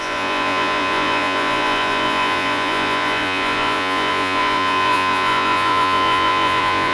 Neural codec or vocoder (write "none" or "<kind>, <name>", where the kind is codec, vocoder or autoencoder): vocoder, Vocos